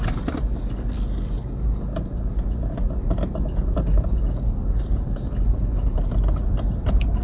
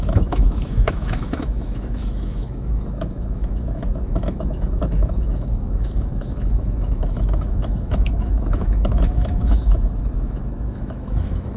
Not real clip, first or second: second